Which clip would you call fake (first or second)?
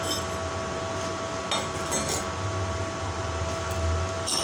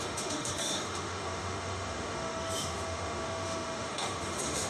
second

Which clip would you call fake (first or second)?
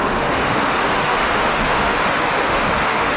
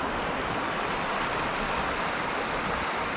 first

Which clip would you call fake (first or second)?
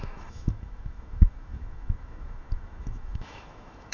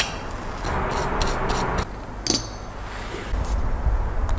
first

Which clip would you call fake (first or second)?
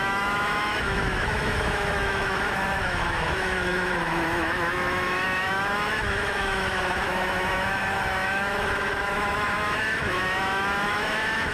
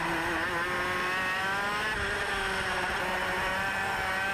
first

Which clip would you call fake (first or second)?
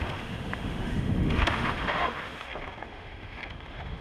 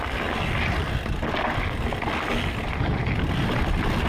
first